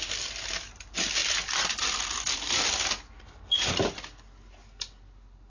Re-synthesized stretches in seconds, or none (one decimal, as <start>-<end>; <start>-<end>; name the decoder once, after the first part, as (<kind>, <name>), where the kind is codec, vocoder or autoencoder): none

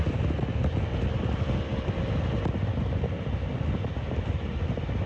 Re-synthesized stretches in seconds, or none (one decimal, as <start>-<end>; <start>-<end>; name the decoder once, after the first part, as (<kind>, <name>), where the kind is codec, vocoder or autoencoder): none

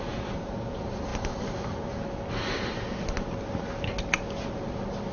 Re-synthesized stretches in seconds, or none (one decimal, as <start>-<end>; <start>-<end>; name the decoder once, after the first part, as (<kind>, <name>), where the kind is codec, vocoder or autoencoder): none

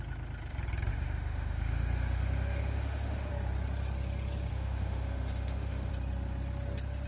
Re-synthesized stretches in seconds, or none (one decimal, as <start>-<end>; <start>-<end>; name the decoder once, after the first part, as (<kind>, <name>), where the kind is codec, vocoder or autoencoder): 0.9-3.3 (autoencoder, DAC-VAE); 4.5-5.9